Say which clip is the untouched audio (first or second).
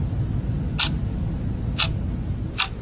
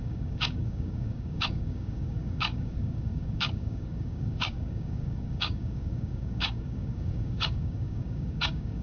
first